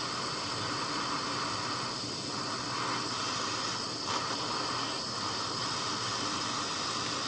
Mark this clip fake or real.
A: real